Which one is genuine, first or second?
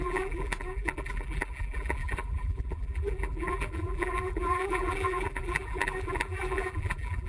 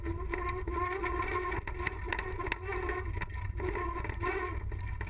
second